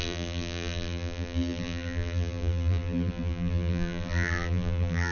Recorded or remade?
remade